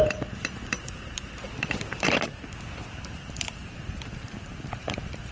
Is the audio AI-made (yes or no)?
yes